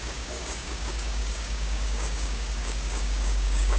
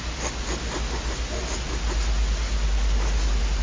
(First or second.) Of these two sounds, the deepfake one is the first